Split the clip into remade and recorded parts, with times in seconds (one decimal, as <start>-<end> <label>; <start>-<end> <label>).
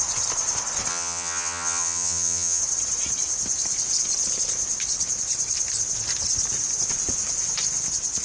0.0-0.9 recorded; 0.9-2.6 remade; 2.6-8.2 recorded